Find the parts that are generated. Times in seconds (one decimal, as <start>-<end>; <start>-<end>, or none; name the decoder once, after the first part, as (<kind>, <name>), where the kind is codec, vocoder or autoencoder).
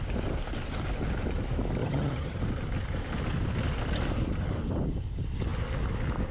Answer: 1.8-2.4 (vocoder, HiFi-GAN)